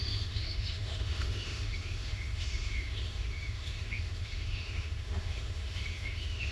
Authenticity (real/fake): fake